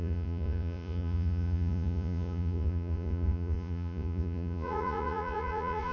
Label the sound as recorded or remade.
remade